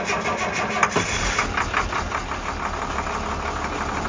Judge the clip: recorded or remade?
recorded